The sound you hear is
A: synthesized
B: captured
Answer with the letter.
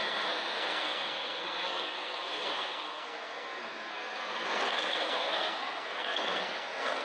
A